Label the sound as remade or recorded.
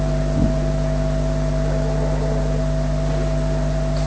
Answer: recorded